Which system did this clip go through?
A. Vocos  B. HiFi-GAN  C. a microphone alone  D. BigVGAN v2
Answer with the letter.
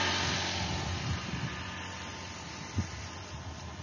C